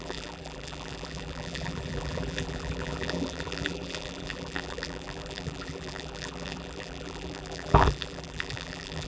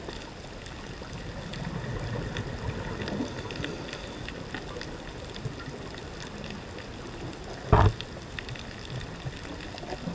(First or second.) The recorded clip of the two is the second